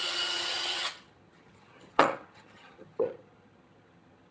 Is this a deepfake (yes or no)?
yes